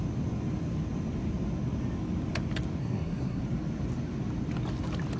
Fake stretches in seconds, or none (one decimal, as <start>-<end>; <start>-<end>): 2.8-3.4